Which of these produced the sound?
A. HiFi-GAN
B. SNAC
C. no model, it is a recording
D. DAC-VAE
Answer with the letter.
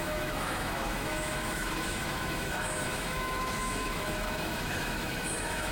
D